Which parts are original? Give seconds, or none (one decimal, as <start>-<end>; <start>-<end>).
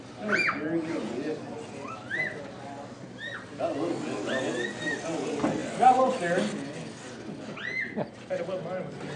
0.0-9.2